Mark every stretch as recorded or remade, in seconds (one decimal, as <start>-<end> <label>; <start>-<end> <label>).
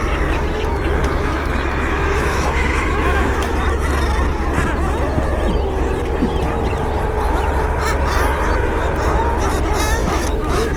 0.0-1.0 recorded; 1.0-3.5 remade; 3.5-10.0 recorded; 10.0-10.8 remade